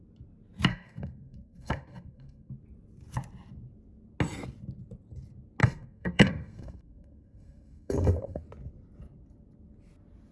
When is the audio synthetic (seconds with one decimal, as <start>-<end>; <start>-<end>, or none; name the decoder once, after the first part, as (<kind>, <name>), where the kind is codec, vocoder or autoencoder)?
0.7-2.5 (codec, SNAC); 5.6-8.4